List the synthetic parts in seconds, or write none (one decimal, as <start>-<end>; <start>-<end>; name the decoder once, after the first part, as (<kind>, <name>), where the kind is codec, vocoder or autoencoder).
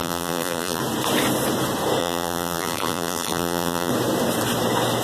0.0-0.8 (vocoder, BigVGAN v2); 2.0-3.9